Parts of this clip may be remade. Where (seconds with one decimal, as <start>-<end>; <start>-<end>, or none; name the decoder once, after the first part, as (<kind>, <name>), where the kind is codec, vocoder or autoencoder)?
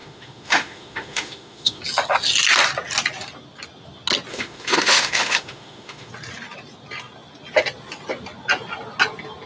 0.0-1.8 (autoencoder, DAC-VAE); 4.3-6.1